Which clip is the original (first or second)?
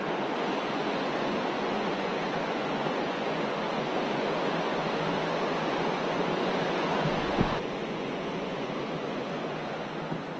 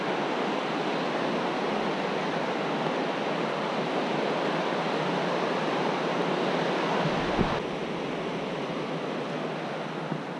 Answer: second